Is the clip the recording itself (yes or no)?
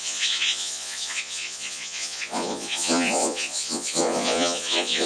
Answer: no